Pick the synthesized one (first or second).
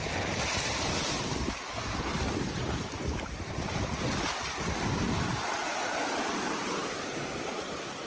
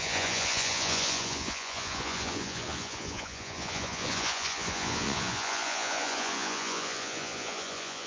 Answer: second